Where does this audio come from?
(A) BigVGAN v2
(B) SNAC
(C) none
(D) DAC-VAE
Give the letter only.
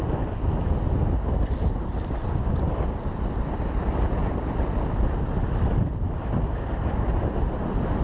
C